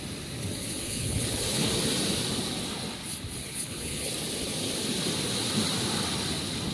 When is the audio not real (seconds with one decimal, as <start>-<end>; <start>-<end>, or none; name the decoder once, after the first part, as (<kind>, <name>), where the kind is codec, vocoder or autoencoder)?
0.6-1.7 (codec, HILCodec); 3.4-4.1